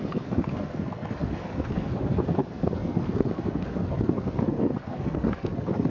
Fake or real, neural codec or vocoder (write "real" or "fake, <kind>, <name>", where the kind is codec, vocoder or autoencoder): fake, codec, SNAC